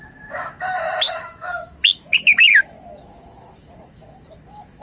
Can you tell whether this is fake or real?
fake